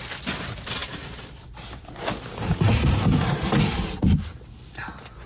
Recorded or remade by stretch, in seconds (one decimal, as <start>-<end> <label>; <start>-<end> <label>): 0.0-5.3 recorded